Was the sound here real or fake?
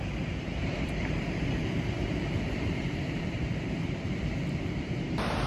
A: fake